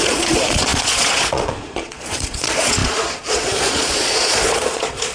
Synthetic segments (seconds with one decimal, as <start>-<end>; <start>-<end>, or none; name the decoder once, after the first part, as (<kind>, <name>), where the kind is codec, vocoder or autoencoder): 0.0-5.1 (vocoder, Vocos)